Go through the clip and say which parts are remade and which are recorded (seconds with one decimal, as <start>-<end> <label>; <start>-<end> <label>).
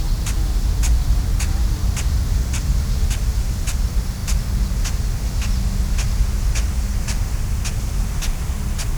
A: 0.0-9.0 recorded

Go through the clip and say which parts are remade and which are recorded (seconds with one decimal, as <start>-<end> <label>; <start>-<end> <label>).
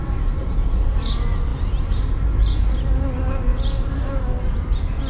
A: 0.0-3.5 recorded; 3.5-4.4 remade; 4.4-5.1 recorded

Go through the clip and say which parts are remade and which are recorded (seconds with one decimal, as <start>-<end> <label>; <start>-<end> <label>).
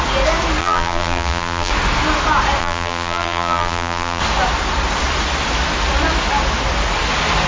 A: 0.0-0.6 recorded; 0.6-1.7 remade; 1.7-2.6 recorded; 2.6-4.2 remade; 4.2-7.5 recorded